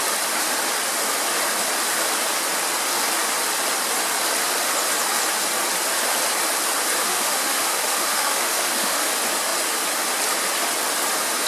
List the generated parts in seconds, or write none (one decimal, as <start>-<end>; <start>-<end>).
7.0-9.1

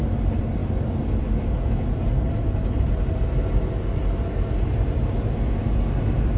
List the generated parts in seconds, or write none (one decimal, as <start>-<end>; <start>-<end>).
none

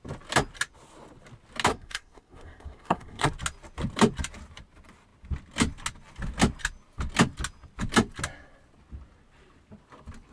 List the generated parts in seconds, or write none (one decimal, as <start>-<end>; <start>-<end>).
1.7-3.3

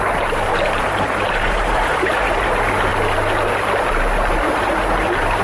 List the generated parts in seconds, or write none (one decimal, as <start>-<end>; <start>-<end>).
0.5-2.5

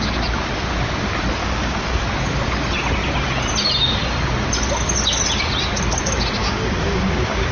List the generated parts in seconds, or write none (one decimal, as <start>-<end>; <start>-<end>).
1.4-2.0; 6.4-7.5

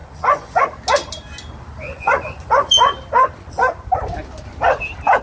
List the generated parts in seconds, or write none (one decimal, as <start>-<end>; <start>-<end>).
0.0-0.6; 1.9-2.7

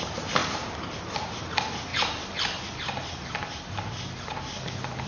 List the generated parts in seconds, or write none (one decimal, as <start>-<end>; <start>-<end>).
none